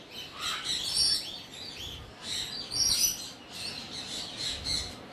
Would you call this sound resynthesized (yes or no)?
no